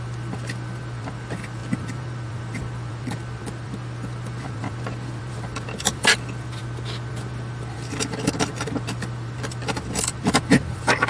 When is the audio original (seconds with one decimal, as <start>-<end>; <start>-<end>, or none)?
6.6-7.1